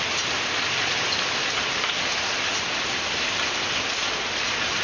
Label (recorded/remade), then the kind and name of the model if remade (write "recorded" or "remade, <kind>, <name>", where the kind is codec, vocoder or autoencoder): recorded